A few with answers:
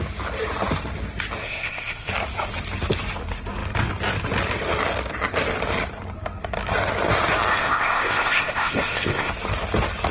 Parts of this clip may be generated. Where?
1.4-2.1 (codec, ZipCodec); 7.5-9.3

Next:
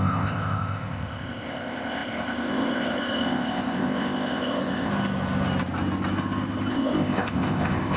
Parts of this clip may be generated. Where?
0.0-4.9 (codec, ZipCodec); 6.7-8.0

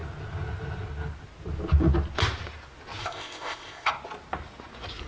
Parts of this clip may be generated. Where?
3.0-3.9 (codec, ZipCodec)

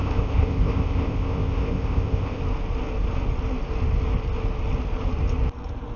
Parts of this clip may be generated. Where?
0.0-2.4 (codec, ZipCodec)

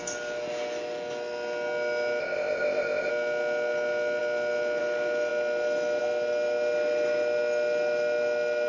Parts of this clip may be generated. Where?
2.2-3.1 (codec, ZipCodec)